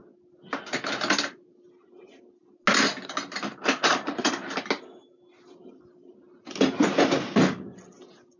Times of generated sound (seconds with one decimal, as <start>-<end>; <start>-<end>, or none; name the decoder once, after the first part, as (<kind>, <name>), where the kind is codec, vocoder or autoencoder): none